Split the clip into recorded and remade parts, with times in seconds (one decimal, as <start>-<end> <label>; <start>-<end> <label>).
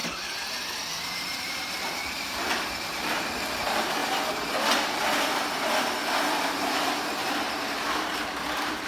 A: 0.0-1.1 recorded; 1.1-4.0 remade; 4.0-7.3 recorded; 7.3-8.9 remade